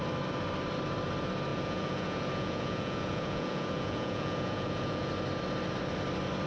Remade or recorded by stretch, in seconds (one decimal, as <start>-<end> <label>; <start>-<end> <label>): 0.0-1.5 recorded; 1.5-5.1 remade; 5.1-6.5 recorded